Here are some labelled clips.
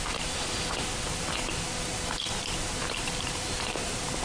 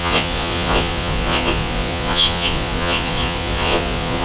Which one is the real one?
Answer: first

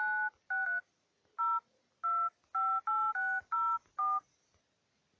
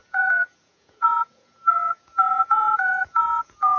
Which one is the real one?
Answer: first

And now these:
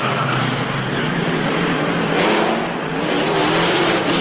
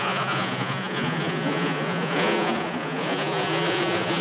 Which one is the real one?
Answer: first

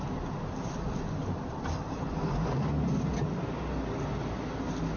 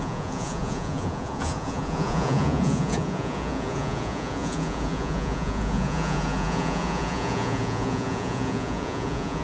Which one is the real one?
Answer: first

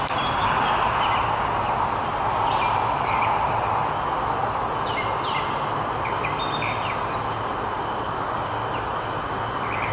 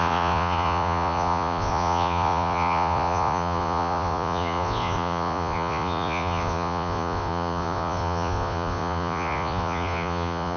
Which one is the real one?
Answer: first